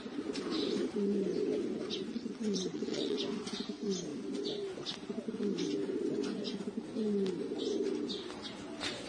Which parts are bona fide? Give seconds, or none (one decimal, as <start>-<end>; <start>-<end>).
0.0-2.1; 3.2-9.1